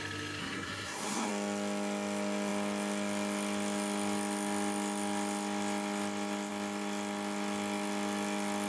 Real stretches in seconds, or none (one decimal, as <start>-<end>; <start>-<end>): 0.0-0.4; 1.3-8.7